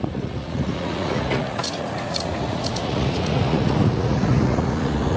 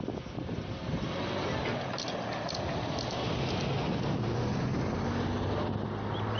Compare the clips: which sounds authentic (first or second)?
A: second